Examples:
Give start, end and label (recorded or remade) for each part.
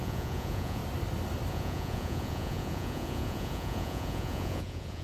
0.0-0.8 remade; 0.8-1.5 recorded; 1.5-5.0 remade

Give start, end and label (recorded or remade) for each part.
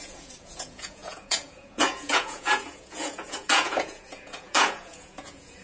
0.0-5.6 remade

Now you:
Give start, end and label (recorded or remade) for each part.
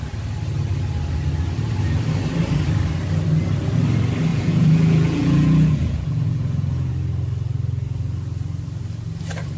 0.0-4.3 recorded; 4.3-6.9 remade; 6.9-9.6 recorded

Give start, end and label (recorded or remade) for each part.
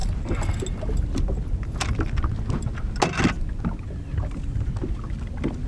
0.0-5.7 recorded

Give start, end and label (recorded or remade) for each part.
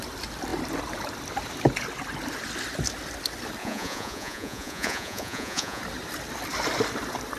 0.0-3.6 recorded; 3.6-5.8 remade; 5.8-7.4 recorded